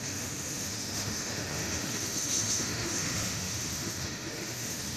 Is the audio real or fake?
fake